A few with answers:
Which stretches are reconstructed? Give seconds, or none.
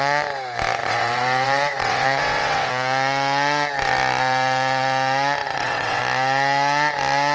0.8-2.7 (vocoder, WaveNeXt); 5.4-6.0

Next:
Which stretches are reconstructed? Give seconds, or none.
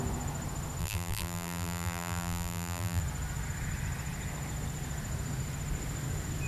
0.8-3.0 (vocoder, BigVGAN v2)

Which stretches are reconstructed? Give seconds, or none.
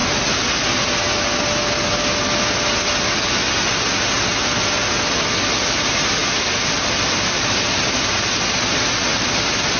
6.2-8.3 (vocoder, BigVGAN v2)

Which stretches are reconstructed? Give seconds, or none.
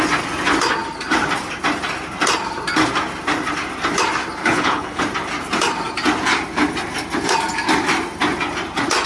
4.4-5.0 (codec, HILCodec)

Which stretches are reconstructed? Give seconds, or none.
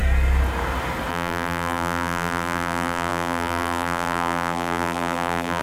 1.1-5.6 (vocoder, BigVGAN v2)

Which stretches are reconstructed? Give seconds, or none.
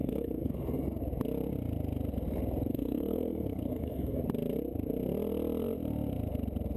0.0-1.0 (codec, SNAC); 2.7-4.2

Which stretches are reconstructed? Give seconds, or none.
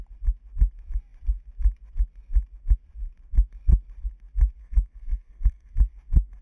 4.6-5.7 (codec, SNAC)